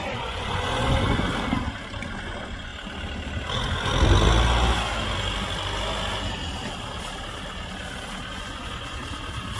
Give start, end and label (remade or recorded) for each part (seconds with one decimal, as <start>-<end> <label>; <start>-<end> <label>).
0.0-1.3 remade; 1.3-2.1 recorded; 2.1-2.7 remade; 2.7-3.5 recorded; 3.5-3.9 remade; 3.9-8.3 recorded; 8.3-9.0 remade; 9.0-9.6 recorded